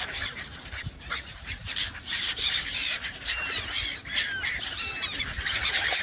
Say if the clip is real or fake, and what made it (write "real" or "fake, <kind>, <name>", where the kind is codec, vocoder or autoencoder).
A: fake, vocoder, BigVGAN v2